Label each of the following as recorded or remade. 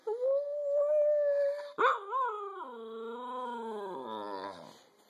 recorded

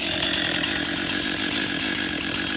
remade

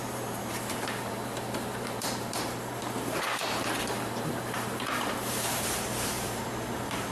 remade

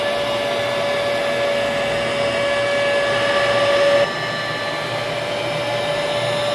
recorded